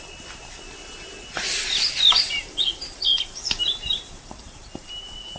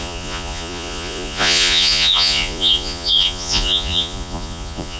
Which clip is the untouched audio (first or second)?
first